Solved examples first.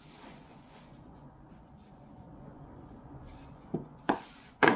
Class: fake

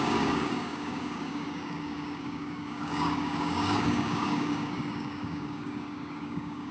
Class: fake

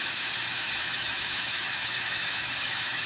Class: fake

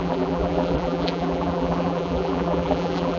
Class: fake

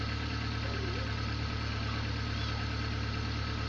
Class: real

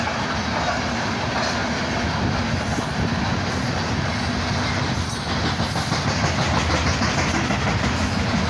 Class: real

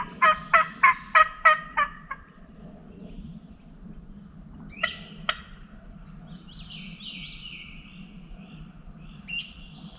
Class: real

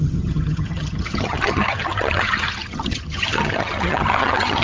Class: fake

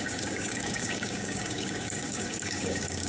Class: fake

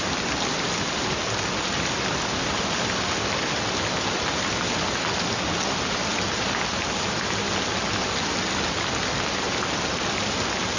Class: real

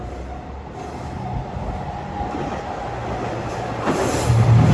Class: real